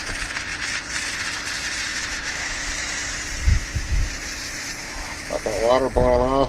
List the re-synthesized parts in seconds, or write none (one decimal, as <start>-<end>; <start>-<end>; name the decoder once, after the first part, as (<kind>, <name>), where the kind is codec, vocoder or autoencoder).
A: 1.9-2.7 (autoencoder, DAC-VAE); 3.5-4.0; 4.8-5.7